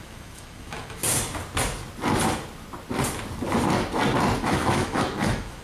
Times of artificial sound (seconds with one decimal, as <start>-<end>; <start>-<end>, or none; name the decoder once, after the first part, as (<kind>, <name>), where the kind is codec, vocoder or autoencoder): 0.0-1.0 (autoencoder, DAC-VAE); 4.4-5.6

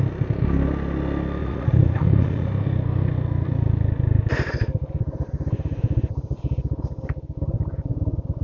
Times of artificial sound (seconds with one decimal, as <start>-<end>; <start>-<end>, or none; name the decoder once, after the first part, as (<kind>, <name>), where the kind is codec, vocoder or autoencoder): 1.4-2.5 (vocoder, Vocos)